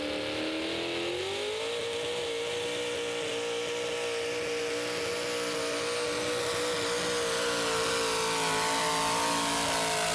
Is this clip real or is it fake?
real